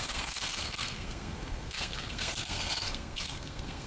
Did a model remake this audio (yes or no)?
yes